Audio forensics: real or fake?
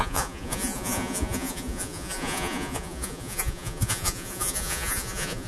fake